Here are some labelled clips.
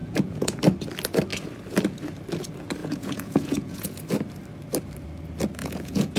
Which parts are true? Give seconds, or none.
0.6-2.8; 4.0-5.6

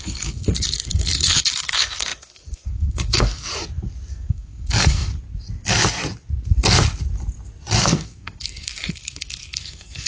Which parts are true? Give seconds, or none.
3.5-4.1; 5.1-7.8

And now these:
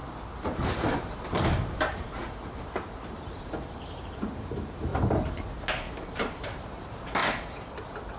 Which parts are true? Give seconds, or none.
4.9-6.1; 7.2-8.2